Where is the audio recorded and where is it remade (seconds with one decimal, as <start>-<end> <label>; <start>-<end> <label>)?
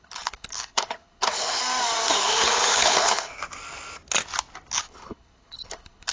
0.0-1.6 remade; 1.6-2.2 recorded; 2.2-3.4 remade; 3.4-4.8 recorded; 4.8-6.1 remade